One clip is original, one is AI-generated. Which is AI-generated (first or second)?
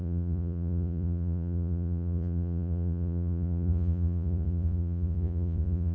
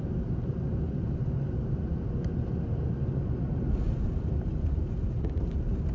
first